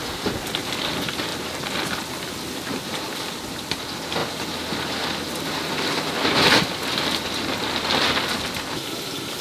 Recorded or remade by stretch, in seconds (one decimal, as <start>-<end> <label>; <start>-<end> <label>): 0.0-9.4 recorded